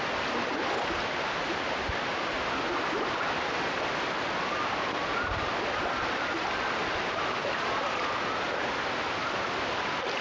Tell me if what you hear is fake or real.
real